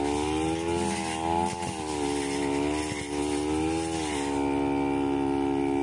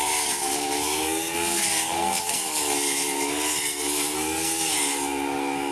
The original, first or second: first